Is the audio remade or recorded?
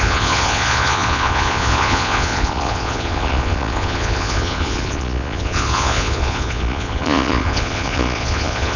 remade